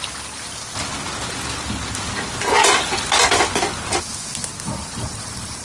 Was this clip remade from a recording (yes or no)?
no